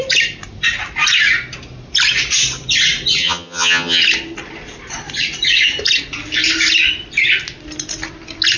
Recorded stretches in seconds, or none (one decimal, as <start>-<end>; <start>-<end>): 0.0-3.2; 4.0-8.6